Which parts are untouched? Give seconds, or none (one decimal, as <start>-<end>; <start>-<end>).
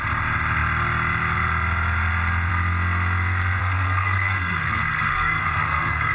0.0-3.6